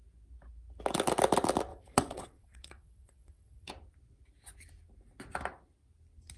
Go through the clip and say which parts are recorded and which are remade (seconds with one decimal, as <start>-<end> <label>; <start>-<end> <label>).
0.0-1.7 recorded; 1.7-3.7 remade; 3.7-6.4 recorded